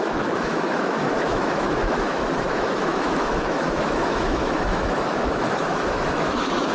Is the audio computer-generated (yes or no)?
yes